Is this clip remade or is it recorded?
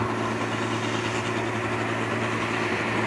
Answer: recorded